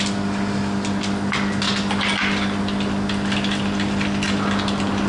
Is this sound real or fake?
real